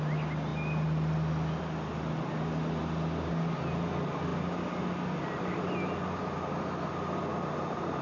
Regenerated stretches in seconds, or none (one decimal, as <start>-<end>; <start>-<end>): none